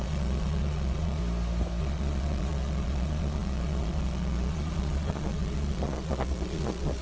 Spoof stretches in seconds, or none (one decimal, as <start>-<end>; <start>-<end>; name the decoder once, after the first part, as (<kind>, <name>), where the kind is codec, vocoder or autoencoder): 0.0-1.2 (vocoder, Vocos); 1.8-7.0